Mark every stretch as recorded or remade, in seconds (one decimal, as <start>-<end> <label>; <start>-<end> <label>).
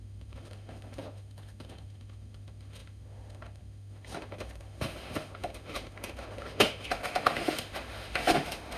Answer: 0.0-8.8 remade